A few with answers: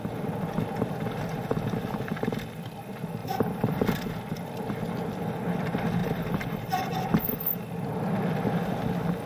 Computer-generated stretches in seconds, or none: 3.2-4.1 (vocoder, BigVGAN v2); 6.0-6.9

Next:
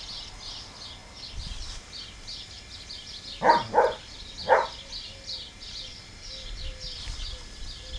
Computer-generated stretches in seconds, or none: 1.0-2.0 (vocoder, BigVGAN v2); 5.9-8.0

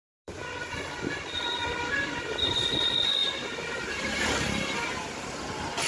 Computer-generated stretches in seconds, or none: 0.0-0.4 (vocoder, BigVGAN v2); 1.2-5.9